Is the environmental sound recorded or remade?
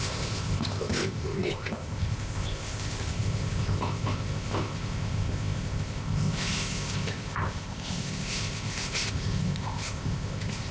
remade